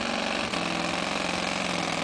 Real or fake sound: real